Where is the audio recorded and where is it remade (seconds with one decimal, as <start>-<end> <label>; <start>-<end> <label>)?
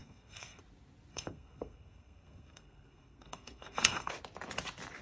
0.0-0.6 remade; 0.6-1.1 recorded; 1.1-4.1 remade; 4.1-5.0 recorded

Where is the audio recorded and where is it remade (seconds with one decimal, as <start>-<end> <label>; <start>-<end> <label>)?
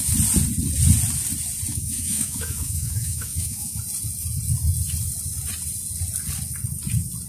0.0-1.7 recorded; 1.7-3.8 remade; 3.8-7.3 recorded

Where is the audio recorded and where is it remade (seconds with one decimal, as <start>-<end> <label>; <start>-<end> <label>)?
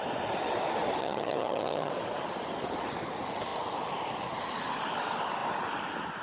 0.0-1.0 recorded; 1.0-1.9 remade; 1.9-6.2 recorded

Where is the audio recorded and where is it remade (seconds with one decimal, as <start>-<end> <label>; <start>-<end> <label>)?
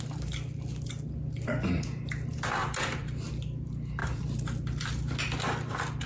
0.0-2.6 recorded; 2.6-3.3 remade; 3.3-4.0 recorded; 4.0-5.2 remade; 5.2-6.1 recorded